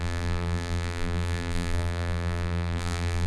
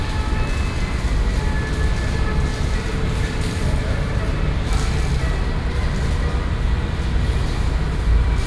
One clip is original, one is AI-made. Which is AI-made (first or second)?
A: first